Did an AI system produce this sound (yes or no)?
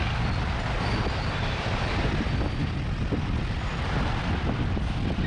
yes